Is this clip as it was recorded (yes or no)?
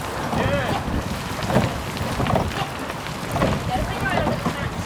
yes